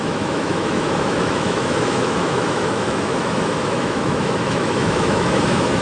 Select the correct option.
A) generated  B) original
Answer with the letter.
A